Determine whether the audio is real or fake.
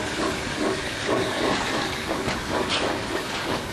fake